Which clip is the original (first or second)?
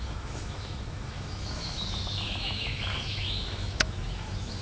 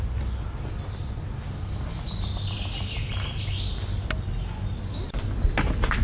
second